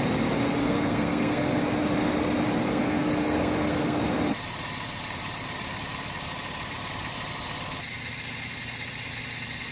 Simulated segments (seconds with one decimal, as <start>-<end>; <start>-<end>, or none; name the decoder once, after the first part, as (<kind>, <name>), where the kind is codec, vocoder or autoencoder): 0.6-1.6 (codec, SNAC); 2.6-4.0